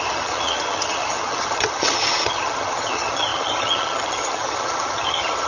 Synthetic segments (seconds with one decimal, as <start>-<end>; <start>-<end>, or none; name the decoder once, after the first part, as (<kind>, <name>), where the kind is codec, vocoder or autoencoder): 0.0-5.5 (vocoder, HiFi-GAN)